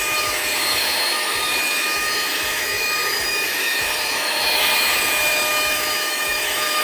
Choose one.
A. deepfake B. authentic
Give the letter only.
A